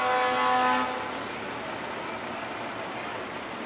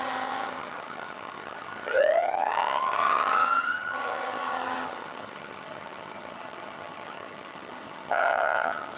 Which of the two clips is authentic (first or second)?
first